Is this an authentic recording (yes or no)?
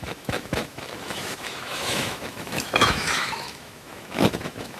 no